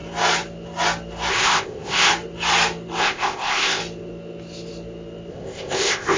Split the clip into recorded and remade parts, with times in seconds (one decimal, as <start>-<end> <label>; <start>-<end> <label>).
0.0-1.3 recorded; 1.3-2.1 remade; 2.1-3.0 recorded; 3.0-3.8 remade; 3.8-5.3 recorded; 5.3-6.2 remade